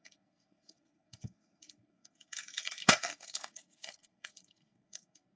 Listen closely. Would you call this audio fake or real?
fake